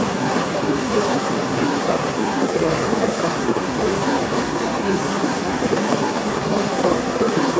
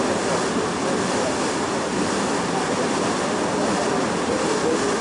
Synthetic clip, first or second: first